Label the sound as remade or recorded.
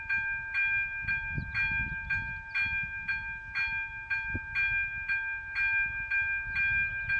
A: recorded